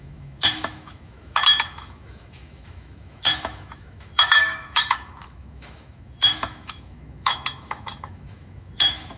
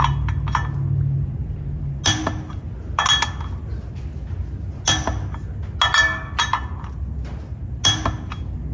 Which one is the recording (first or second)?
second